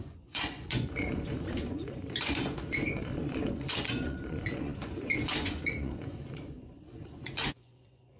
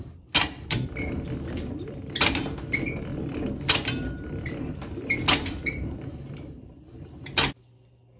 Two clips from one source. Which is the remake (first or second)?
first